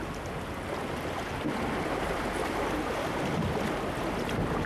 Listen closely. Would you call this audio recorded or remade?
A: recorded